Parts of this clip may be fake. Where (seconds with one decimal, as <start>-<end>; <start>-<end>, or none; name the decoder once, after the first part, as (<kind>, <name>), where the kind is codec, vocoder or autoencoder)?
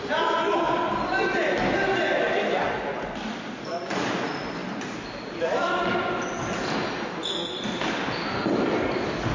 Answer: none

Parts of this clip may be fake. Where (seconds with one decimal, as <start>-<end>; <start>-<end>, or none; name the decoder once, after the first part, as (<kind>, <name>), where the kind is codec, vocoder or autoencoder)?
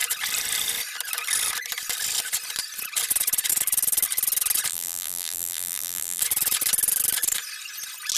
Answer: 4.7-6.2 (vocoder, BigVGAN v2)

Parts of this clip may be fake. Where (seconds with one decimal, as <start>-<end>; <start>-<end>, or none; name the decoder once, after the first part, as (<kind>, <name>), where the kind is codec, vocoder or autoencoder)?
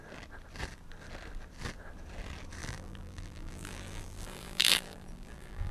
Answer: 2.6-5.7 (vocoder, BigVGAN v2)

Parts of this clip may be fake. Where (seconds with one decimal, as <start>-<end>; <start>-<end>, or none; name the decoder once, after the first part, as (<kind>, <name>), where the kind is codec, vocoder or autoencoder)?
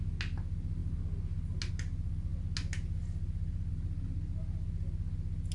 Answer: none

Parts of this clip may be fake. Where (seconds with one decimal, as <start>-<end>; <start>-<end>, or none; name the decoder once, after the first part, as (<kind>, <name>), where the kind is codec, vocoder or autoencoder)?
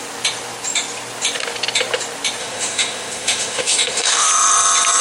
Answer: 2.4-4.3 (autoencoder, DAC-VAE)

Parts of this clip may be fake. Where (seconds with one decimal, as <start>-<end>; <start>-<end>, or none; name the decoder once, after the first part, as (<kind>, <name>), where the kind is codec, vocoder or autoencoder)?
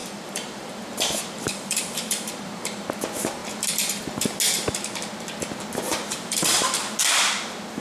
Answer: 0.0-2.9 (vocoder, BigVGAN v2); 5.9-6.6